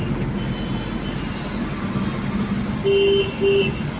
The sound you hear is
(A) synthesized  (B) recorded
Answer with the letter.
B